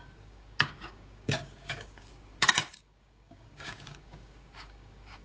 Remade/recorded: remade